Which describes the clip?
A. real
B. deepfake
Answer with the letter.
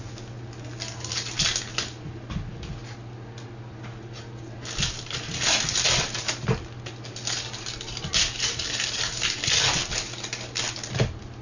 A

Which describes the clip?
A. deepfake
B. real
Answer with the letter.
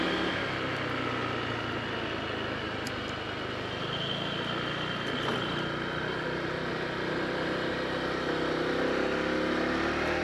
B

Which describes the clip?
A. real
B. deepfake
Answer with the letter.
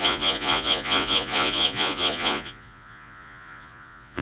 B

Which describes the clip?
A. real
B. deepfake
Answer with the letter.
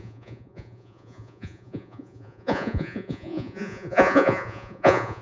B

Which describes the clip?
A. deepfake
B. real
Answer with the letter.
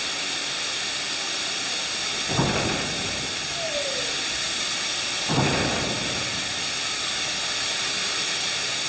B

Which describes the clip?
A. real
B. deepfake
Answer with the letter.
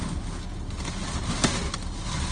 A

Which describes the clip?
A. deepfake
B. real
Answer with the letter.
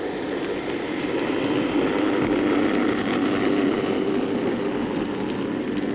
B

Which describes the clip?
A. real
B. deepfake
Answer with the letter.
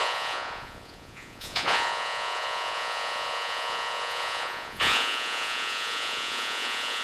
B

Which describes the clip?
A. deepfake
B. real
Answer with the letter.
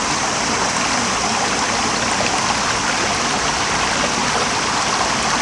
B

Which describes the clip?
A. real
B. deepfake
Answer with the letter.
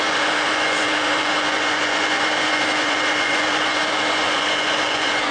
B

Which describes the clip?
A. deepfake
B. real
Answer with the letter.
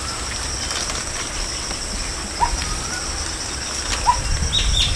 B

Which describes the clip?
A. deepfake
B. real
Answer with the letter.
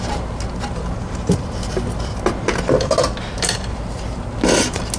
B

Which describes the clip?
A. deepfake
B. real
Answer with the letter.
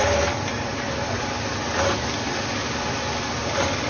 B